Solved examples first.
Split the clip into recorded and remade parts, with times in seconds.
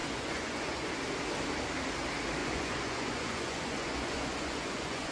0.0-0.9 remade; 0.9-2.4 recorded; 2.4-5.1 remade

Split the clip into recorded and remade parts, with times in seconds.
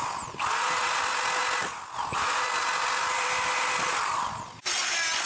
0.0-5.3 recorded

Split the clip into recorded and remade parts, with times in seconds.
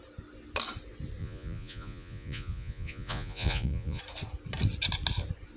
0.0-1.2 recorded; 1.2-4.0 remade; 4.0-5.6 recorded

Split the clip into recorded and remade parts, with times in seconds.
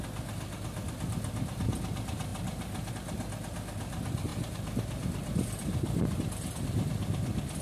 0.0-7.6 recorded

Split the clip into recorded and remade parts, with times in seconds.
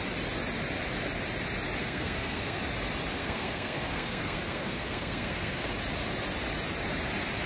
0.0-1.8 recorded; 1.8-2.6 remade; 2.6-3.2 recorded; 3.2-5.7 remade; 5.7-7.5 recorded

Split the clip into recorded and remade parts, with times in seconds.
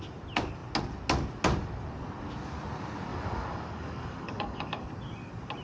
0.0-3.1 recorded; 3.1-4.9 remade; 4.9-5.6 recorded